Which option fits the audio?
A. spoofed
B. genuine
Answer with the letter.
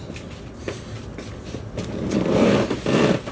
B